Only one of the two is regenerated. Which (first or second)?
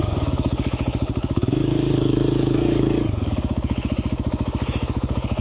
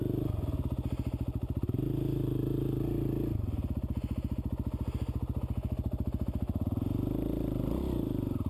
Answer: first